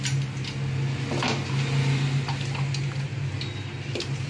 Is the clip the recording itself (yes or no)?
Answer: yes